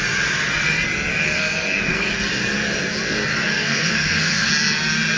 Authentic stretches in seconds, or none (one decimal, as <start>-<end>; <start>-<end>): 0.0-1.1; 2.1-3.3; 4.5-5.2